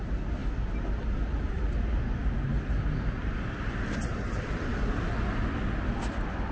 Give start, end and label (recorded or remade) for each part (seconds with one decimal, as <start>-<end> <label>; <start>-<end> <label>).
0.0-6.5 recorded

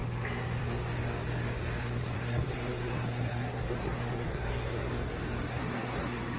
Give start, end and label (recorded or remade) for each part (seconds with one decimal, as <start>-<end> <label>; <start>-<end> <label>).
0.0-1.8 recorded; 1.8-4.9 remade; 4.9-5.5 recorded; 5.5-6.4 remade

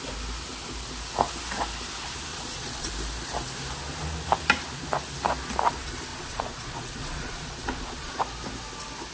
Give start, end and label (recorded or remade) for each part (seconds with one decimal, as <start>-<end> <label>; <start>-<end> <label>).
0.0-2.3 recorded; 2.3-2.9 remade; 2.9-6.1 recorded; 6.1-8.2 remade; 8.2-9.1 recorded